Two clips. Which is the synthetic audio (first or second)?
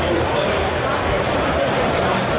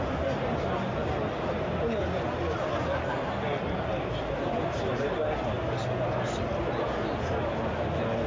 first